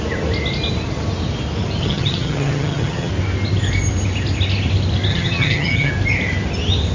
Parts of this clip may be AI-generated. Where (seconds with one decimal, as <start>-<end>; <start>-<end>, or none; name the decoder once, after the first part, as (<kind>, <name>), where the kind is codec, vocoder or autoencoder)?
1.8-3.1 (vocoder, HiFi-GAN); 5.1-5.9